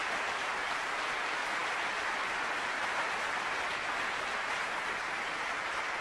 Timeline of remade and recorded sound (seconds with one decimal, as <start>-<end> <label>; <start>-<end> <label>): 0.0-6.0 recorded